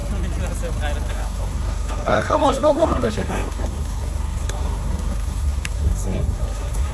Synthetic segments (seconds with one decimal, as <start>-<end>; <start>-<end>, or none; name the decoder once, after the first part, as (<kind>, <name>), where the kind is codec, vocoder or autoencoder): 1.1-6.9 (codec, SNAC)